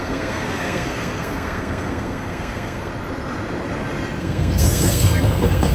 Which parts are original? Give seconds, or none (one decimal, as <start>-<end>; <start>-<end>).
2.9-4.2